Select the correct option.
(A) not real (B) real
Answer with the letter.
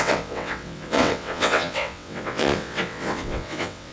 A